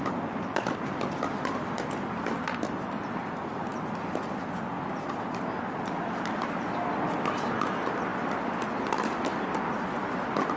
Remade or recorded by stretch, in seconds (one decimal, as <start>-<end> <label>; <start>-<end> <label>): 0.0-10.6 recorded